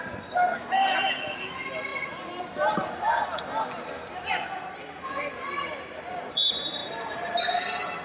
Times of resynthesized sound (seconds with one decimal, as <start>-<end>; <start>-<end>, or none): 0.0-8.0